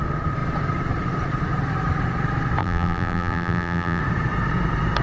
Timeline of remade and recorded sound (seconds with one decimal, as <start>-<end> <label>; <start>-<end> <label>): 0.0-2.6 recorded; 2.6-4.0 remade; 4.0-5.0 recorded